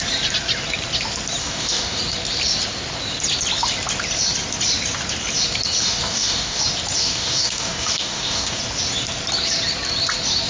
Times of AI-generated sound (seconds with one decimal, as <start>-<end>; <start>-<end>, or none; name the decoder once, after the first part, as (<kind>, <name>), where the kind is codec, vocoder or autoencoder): 1.4-2.0 (codec, DAC); 5.8-6.6; 7.0-8.6